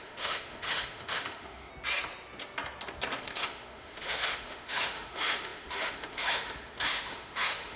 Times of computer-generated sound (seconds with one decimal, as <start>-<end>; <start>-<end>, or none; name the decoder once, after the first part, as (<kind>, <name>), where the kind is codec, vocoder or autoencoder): 0.0-1.7 (autoencoder, DAC-VAE); 3.2-7.8